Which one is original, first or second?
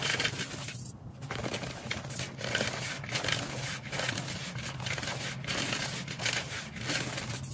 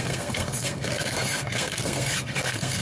first